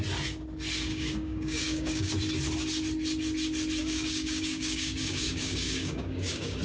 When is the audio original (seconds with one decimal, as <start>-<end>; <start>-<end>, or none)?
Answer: 0.0-0.9; 2.1-3.8